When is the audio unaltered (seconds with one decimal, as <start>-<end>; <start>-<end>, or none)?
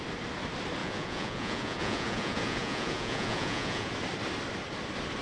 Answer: 0.0-0.8; 3.9-5.2